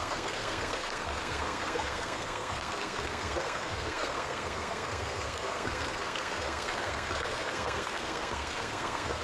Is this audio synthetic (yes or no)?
yes